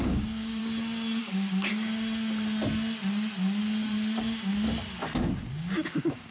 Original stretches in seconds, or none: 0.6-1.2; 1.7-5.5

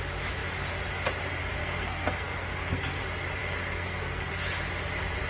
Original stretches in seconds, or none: 0.0-1.6; 3.0-3.4; 4.3-5.3

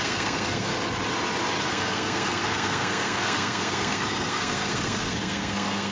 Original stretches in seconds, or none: 0.7-1.6